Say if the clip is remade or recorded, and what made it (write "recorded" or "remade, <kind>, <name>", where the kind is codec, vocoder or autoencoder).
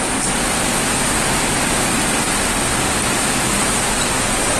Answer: recorded